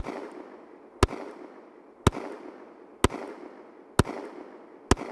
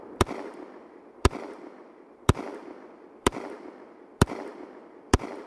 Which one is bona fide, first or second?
first